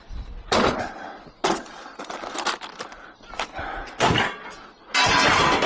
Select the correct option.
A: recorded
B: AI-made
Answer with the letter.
A